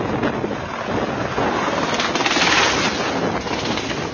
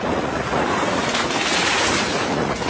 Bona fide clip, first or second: first